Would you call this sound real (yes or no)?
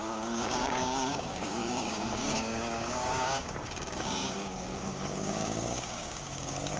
no